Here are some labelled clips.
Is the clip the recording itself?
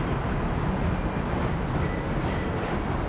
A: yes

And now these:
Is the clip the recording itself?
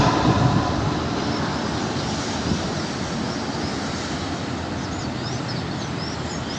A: no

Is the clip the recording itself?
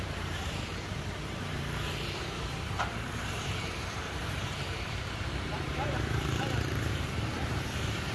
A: no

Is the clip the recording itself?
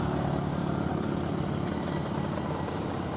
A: no